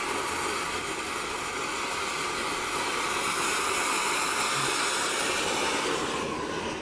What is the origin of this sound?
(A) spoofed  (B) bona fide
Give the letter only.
B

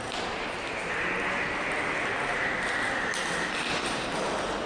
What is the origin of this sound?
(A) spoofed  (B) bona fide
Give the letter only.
B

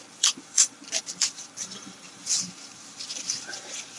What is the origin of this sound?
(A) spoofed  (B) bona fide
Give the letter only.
A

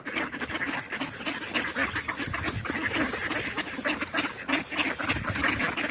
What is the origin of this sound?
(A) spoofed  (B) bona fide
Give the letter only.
B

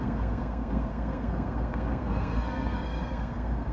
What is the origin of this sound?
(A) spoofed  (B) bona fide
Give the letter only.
A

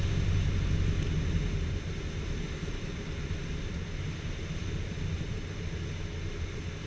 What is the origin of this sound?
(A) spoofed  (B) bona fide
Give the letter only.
B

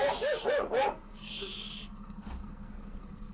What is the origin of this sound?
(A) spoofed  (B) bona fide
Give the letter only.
A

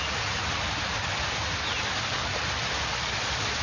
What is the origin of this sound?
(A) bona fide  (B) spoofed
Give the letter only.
A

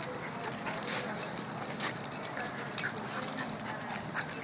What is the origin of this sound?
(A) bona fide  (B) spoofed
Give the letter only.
A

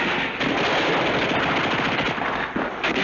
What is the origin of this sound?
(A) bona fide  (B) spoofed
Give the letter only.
A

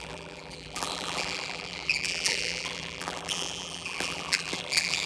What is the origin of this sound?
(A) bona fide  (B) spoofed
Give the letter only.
B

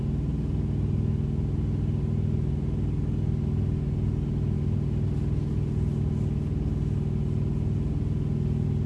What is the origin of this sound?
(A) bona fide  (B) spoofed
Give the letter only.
A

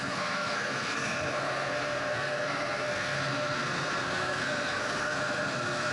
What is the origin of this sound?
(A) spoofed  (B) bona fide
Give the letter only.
A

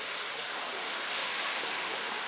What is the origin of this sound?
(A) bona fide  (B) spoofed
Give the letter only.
B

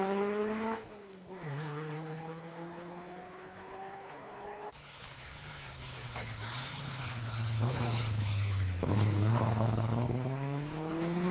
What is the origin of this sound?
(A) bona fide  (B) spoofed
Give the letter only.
B